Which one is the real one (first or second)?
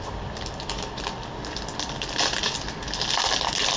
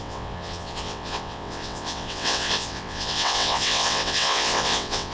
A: first